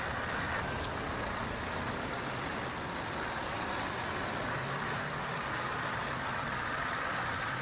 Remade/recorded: recorded